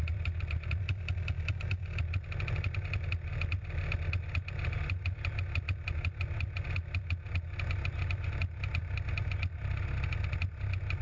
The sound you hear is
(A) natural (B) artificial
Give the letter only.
A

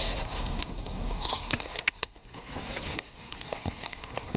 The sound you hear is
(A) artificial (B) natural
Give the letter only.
A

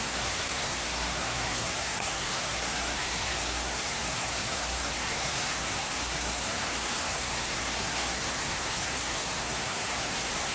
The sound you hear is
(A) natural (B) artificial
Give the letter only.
B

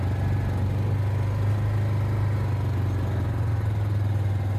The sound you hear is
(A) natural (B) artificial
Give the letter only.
A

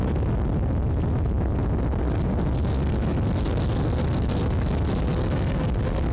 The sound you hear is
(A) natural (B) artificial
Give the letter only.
A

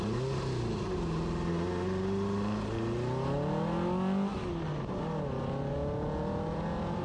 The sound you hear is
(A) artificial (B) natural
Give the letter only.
B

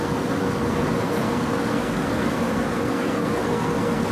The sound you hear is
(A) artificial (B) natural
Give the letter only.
A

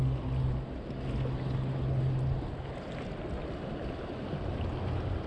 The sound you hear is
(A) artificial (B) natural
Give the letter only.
B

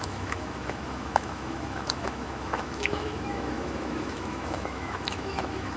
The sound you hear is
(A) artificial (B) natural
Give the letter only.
A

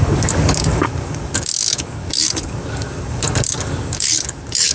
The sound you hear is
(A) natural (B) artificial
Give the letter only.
B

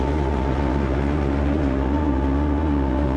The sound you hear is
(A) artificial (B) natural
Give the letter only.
A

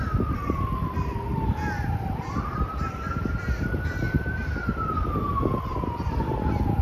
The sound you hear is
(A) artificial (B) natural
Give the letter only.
B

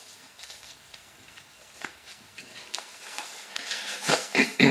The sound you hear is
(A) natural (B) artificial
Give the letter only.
B